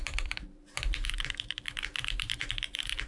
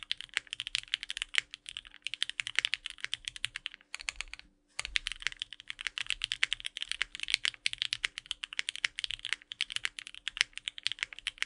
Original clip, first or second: second